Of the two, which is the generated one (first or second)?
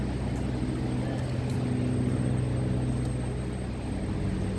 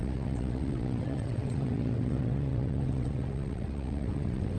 second